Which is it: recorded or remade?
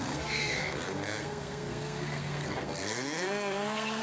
remade